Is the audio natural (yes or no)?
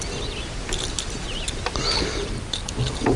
yes